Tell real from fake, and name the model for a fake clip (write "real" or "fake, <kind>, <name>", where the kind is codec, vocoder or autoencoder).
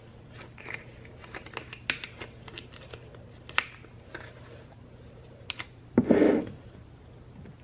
real